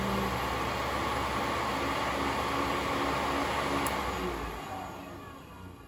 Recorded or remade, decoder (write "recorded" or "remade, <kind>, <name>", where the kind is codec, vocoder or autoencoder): recorded